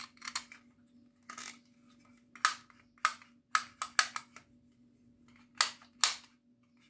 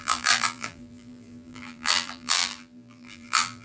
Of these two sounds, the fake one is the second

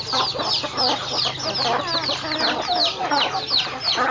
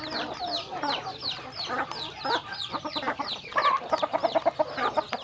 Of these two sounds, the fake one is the second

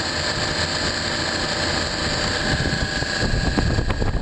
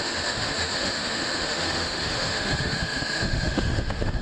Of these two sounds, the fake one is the second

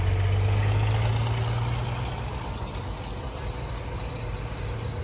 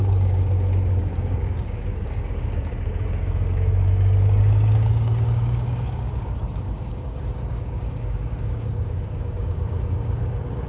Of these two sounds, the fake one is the second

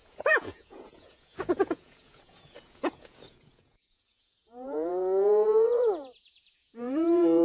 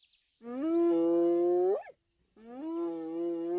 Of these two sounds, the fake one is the first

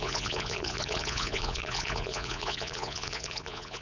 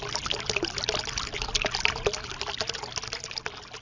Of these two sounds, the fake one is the first